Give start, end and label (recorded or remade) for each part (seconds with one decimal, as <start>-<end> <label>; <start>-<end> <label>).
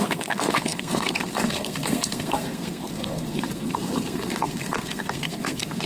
0.0-5.9 remade